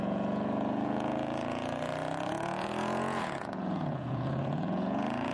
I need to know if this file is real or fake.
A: fake